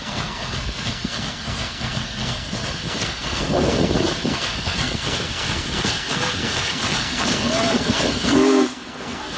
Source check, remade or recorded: remade